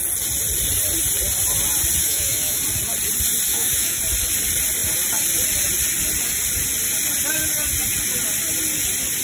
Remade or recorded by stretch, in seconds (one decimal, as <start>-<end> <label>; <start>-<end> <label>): 0.0-2.0 recorded; 2.0-2.6 remade; 2.6-3.5 recorded; 3.5-4.0 remade; 4.0-9.2 recorded